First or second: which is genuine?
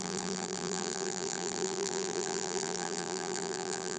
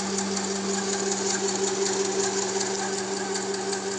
second